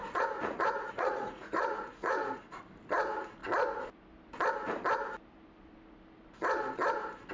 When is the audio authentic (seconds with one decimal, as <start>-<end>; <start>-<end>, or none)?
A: 2.6-7.3